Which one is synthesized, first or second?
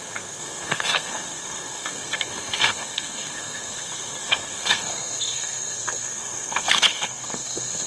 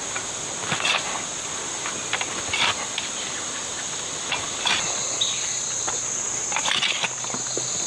first